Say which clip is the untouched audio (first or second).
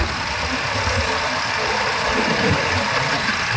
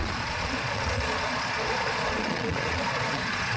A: first